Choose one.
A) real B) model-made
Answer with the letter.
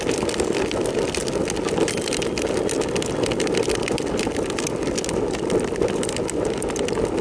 A